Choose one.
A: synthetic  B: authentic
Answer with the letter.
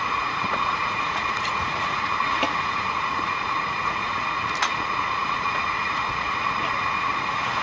A